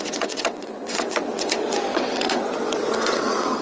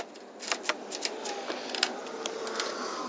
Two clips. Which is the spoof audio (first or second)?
first